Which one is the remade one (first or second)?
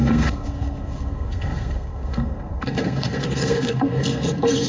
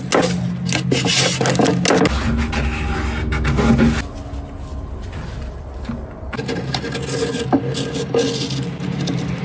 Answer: first